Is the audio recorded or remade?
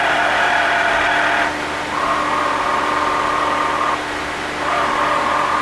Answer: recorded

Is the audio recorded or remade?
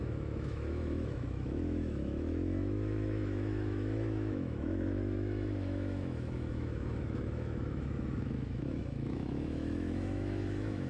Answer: remade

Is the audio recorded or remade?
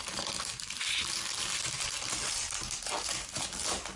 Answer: recorded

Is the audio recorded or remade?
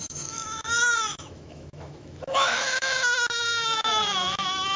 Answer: remade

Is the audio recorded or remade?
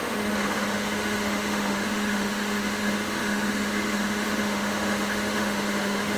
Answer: remade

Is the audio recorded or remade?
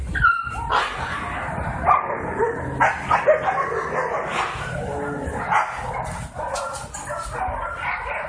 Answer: recorded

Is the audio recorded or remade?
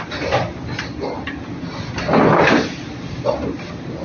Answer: recorded